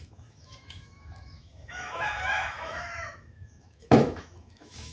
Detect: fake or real fake